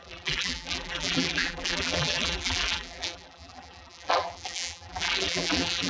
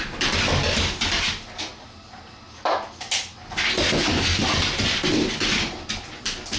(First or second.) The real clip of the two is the second